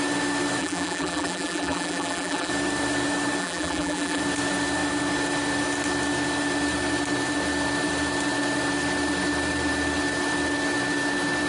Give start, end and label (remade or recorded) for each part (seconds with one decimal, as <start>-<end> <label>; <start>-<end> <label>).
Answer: 0.0-0.6 recorded; 0.6-2.5 remade; 2.5-3.4 recorded; 3.4-4.2 remade; 4.2-11.5 recorded